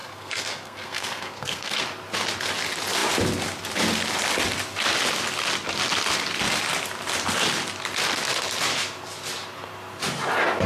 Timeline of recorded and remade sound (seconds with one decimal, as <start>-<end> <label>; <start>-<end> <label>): 0.0-1.8 remade; 1.8-10.7 recorded